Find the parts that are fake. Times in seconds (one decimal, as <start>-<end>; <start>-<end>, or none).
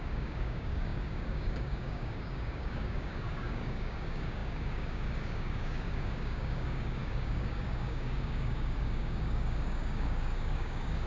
0.0-11.1